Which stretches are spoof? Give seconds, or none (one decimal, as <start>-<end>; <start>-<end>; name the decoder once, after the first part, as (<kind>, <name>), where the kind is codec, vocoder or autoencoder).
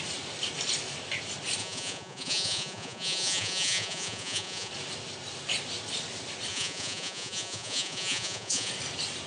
1.6-4.7 (vocoder, Vocos); 6.5-8.7